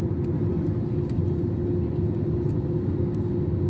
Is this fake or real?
real